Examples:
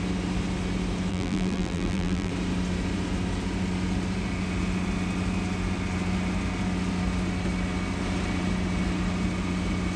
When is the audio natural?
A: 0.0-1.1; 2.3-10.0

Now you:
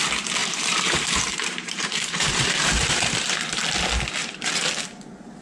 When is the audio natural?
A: 0.0-0.4; 3.6-4.2; 4.7-5.4

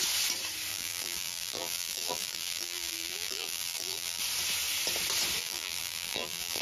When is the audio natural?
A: 0.0-0.7; 4.2-5.4

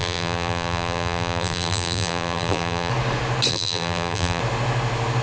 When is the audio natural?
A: 2.9-3.5; 4.4-5.2

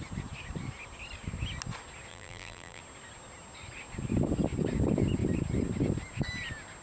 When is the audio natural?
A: 0.0-2.1; 2.8-6.8

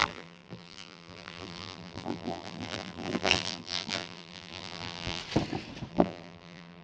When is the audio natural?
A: 5.2-5.9

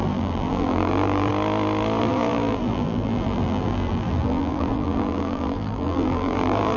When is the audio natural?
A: 1.3-2.0